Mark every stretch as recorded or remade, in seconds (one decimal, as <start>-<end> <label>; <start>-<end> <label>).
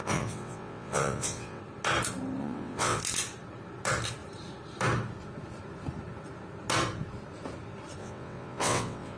0.0-1.6 remade; 1.6-2.4 recorded; 2.4-3.0 remade; 3.0-8.0 recorded; 8.0-9.2 remade